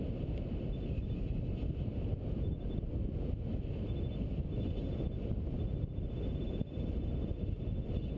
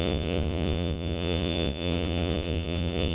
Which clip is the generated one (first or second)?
second